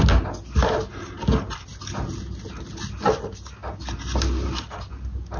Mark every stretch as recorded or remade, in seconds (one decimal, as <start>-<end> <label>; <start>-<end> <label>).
0.0-5.4 recorded